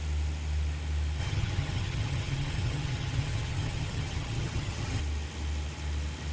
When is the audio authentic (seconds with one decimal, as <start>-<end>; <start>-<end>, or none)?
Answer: 0.0-1.2; 5.0-6.3